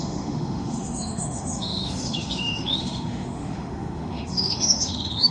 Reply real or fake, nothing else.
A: fake